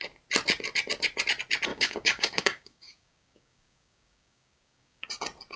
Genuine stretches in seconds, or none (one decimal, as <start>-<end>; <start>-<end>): 0.0-1.7; 5.1-5.6

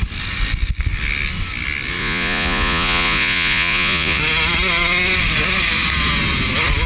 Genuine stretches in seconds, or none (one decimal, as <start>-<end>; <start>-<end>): 0.0-2.0; 4.2-6.9